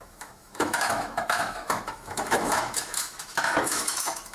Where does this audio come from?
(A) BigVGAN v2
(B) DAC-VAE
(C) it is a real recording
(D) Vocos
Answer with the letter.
B